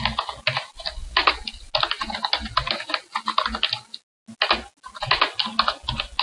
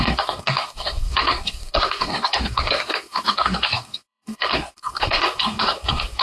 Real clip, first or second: first